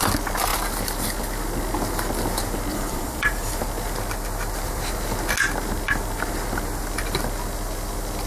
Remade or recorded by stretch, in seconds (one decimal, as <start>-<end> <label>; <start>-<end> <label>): 0.0-2.7 recorded; 2.7-3.6 remade; 3.6-8.3 recorded